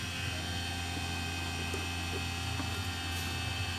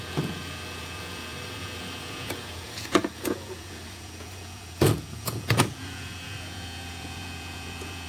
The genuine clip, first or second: first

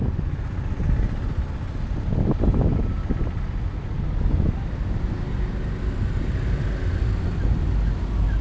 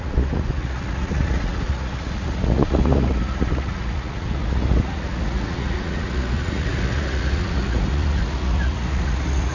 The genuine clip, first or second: first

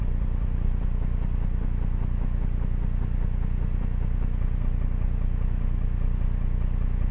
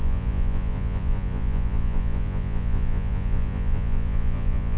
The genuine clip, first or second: first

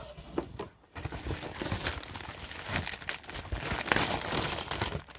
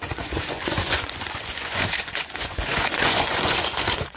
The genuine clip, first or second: first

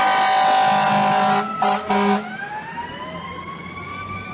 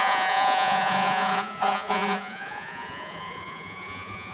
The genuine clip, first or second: first